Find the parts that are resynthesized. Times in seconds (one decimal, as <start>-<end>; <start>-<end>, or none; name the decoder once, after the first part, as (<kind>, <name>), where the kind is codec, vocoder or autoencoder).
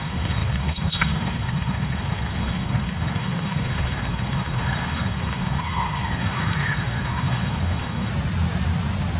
0.0-8.1 (codec, SNAC)